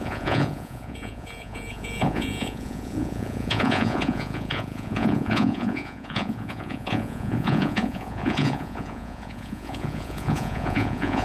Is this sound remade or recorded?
remade